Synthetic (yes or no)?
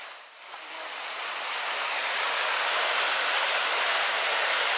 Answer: no